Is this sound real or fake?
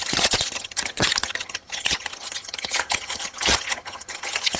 fake